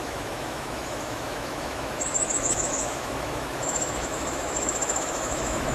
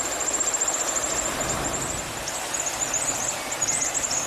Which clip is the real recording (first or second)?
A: second